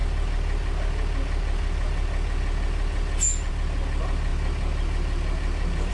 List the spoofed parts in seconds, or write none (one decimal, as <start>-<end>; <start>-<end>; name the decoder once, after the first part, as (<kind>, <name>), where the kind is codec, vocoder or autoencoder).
none